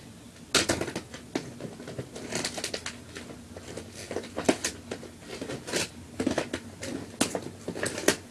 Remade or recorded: recorded